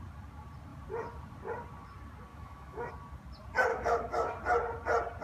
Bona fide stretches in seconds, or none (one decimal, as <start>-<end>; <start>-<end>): 0.0-2.3; 2.9-3.7; 4.3-5.2